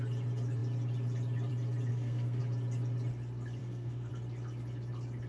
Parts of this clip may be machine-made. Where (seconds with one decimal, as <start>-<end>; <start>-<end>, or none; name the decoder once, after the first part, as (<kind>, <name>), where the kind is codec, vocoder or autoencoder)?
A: 1.9-2.4 (codec, SNAC); 3.6-4.1